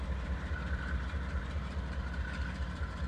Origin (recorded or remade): remade